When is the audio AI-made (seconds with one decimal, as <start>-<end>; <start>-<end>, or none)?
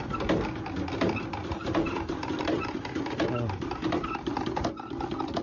1.4-4.6